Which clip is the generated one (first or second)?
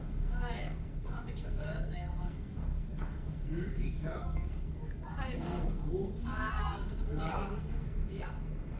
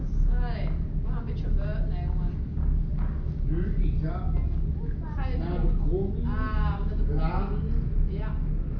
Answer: first